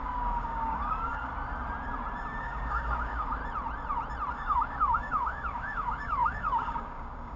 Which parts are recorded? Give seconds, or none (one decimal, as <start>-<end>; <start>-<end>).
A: 1.3-2.4; 3.4-4.3